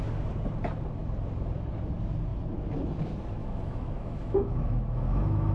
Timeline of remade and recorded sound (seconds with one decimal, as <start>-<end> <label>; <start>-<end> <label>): 0.0-3.4 recorded; 3.4-5.5 remade